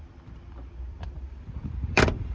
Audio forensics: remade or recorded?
remade